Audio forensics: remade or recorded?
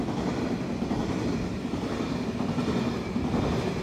recorded